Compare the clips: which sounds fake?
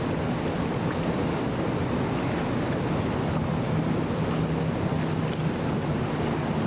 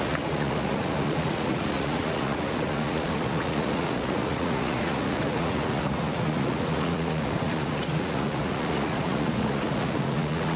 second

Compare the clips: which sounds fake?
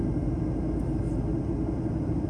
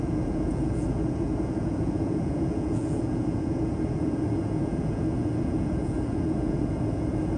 second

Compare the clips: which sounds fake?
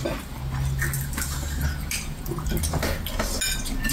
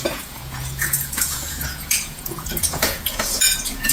second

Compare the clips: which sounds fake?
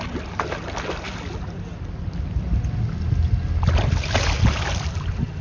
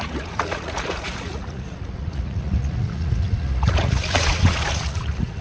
second